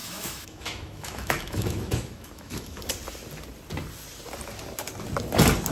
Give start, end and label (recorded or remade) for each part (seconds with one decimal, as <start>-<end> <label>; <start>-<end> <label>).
0.0-2.8 remade; 2.8-5.7 recorded